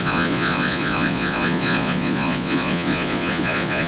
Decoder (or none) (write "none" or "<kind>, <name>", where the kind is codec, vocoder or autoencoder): vocoder, Vocos